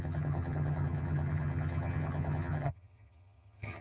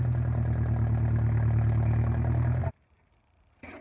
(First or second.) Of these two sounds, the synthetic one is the first